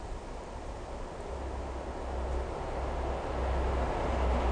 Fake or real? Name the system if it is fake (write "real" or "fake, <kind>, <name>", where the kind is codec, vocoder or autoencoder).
real